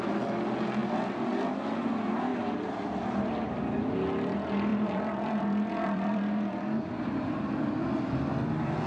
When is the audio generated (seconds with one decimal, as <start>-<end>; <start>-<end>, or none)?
4.7-7.8